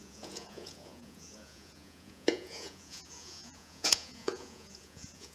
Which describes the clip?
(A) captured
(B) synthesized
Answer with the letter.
B